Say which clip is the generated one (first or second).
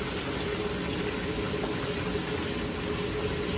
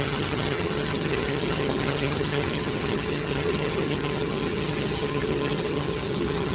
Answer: second